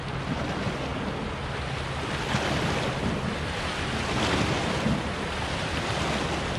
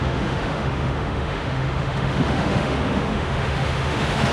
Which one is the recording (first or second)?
first